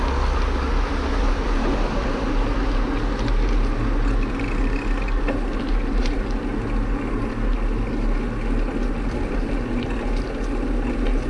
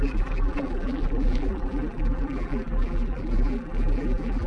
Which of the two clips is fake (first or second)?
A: second